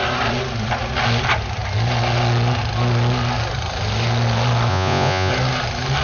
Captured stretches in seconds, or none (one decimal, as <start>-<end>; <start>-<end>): 0.0-4.7; 5.3-6.0